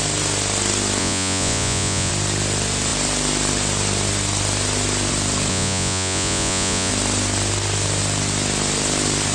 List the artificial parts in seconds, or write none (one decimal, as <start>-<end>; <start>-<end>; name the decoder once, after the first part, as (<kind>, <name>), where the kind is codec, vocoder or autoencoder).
1.0-2.1 (vocoder, Vocos); 5.5-6.9